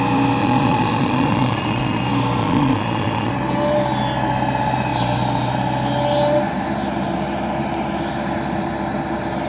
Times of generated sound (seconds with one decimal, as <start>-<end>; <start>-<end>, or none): 0.4-2.0; 2.4-3.3